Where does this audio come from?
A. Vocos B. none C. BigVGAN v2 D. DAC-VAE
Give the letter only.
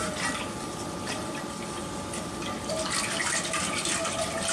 B